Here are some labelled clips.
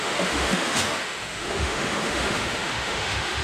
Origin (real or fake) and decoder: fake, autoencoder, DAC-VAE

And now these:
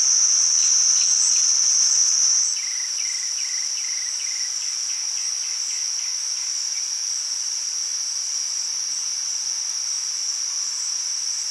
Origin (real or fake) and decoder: fake, vocoder, BigVGAN v2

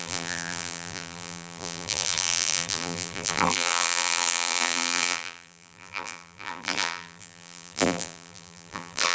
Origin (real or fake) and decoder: fake, vocoder, BigVGAN v2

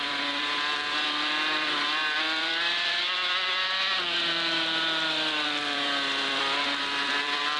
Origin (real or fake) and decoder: fake, vocoder, BigVGAN v2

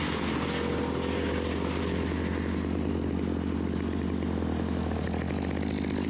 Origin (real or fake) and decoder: real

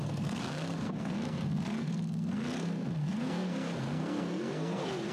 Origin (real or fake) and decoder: fake, codec, SNAC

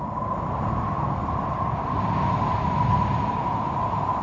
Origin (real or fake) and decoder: real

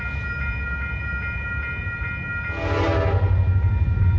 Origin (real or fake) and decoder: real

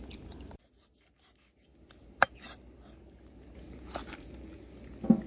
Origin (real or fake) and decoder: real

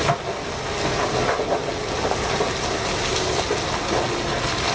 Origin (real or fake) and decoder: real